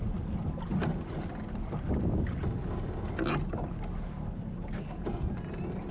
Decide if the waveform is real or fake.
real